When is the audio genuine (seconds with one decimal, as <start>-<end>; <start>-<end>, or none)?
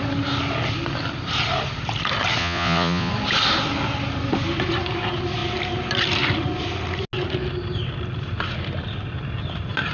0.0-2.4; 3.1-9.9